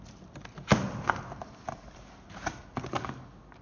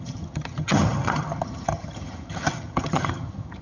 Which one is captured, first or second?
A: first